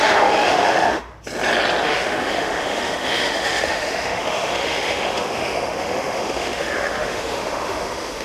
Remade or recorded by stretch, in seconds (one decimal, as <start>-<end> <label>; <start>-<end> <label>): 0.0-1.1 remade; 1.1-1.8 recorded; 1.8-8.2 remade